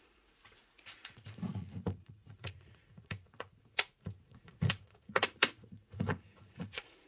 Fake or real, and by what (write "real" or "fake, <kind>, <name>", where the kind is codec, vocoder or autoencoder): fake, vocoder, Vocos